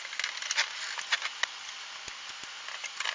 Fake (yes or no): no